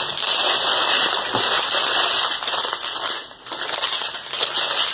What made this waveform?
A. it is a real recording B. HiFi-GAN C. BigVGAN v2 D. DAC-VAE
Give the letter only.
A